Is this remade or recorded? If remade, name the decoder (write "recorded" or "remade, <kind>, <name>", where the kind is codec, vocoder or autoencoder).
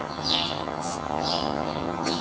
remade, vocoder, HiFi-GAN